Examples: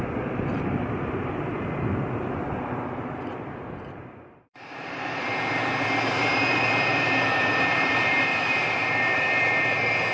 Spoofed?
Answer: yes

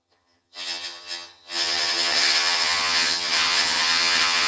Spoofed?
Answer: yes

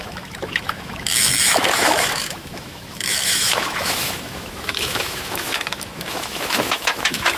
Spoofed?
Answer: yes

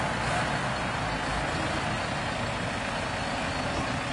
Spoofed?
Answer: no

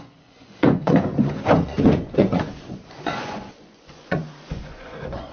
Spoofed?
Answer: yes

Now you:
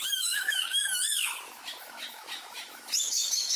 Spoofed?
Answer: yes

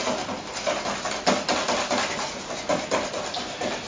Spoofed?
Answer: no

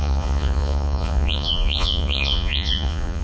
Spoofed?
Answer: yes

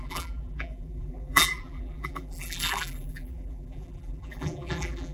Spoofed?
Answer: yes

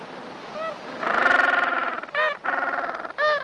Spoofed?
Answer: no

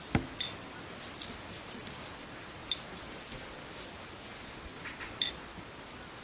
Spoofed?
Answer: no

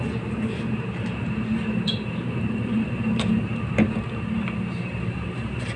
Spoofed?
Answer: yes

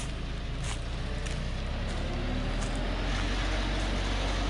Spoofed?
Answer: no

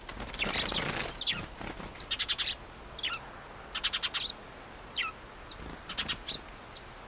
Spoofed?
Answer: no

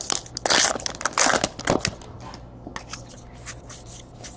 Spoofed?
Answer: no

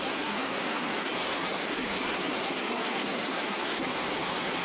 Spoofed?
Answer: yes